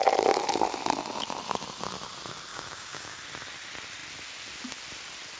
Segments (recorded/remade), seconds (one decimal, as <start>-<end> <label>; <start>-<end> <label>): 0.0-2.5 recorded; 2.5-3.2 remade; 3.2-5.4 recorded